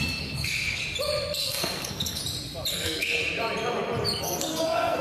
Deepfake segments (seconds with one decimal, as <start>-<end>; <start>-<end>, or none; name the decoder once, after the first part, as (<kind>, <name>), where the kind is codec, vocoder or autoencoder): 0.0-0.8 (codec, SNAC); 1.4-2.2; 2.7-3.2; 4.2-5.0